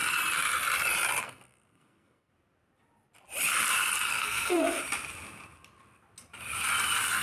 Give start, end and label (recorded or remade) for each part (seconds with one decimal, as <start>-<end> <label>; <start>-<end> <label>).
0.0-1.2 recorded; 1.2-2.3 remade; 2.3-4.1 recorded; 4.1-4.8 remade; 4.8-7.2 recorded

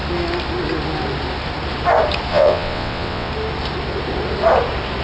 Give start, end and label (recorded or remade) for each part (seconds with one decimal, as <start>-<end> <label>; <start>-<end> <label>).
0.0-2.3 recorded; 2.3-3.3 remade; 3.3-5.0 recorded

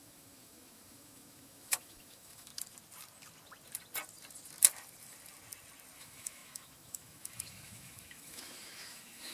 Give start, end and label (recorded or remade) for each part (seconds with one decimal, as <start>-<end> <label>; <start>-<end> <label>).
0.0-2.5 remade; 2.5-6.0 recorded; 6.0-9.3 remade

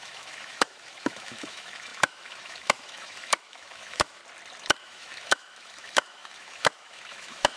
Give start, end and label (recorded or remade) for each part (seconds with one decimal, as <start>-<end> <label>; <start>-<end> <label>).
0.0-4.2 remade; 4.2-4.8 recorded; 4.8-7.6 remade

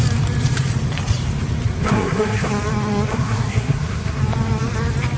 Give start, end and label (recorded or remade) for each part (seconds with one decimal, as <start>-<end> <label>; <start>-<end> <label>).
0.0-1.8 recorded; 1.8-2.5 remade; 2.5-3.1 recorded; 3.1-4.2 remade; 4.2-5.2 recorded

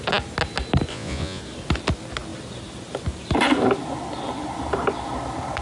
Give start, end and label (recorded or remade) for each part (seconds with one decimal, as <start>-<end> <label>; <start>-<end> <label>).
0.0-0.9 recorded; 0.9-1.4 remade; 1.4-5.6 recorded

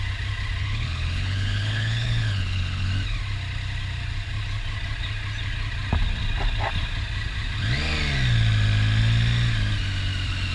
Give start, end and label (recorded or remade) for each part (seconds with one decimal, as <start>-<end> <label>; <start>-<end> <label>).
0.0-0.6 recorded; 0.6-2.9 remade; 2.9-10.5 recorded